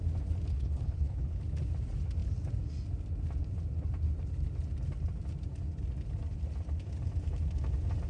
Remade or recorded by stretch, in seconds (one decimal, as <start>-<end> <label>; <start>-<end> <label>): 0.0-0.5 recorded; 0.5-1.4 remade; 1.4-8.1 recorded